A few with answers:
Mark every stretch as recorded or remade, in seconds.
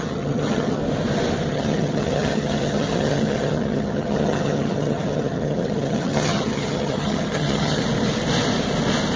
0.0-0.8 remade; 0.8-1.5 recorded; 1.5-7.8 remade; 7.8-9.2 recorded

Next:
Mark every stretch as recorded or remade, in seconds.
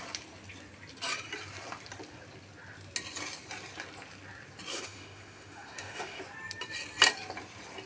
0.0-4.7 recorded; 4.7-6.2 remade; 6.2-7.9 recorded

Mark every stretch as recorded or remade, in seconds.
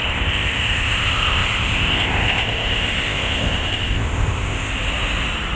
0.0-4.7 remade; 4.7-5.6 recorded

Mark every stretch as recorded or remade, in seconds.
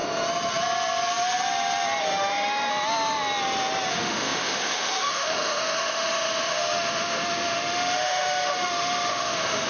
0.0-2.0 recorded; 2.0-2.7 remade; 2.7-3.9 recorded; 3.9-9.7 remade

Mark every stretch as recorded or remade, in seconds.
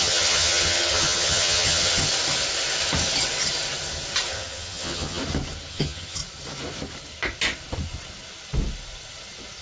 0.0-2.1 remade; 2.1-4.3 recorded; 4.3-5.2 remade; 5.2-5.7 recorded; 5.7-6.2 remade; 6.2-9.6 recorded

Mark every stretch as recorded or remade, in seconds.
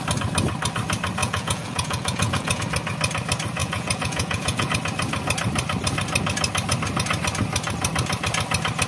0.0-1.2 recorded; 1.2-2.6 remade; 2.6-3.6 recorded; 3.6-4.7 remade; 4.7-8.9 recorded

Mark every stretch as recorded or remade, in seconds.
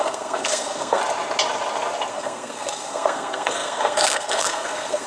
0.0-1.0 remade; 1.0-2.1 recorded; 2.1-5.1 remade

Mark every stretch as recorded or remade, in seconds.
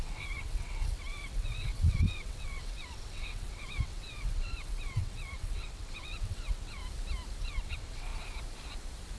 0.0-6.8 remade; 6.8-7.4 recorded; 7.4-8.1 remade; 8.1-9.2 recorded